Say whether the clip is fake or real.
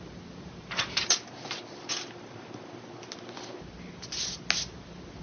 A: real